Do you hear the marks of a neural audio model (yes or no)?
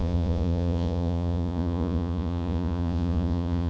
yes